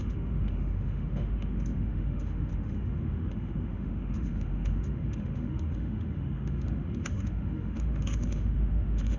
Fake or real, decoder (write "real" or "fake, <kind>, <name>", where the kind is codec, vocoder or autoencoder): fake, autoencoder, DAC-VAE